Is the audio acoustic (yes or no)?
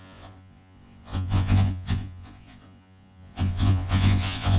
no